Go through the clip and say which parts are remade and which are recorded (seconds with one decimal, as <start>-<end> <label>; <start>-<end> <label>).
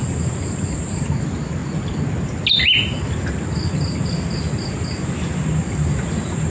0.0-6.5 recorded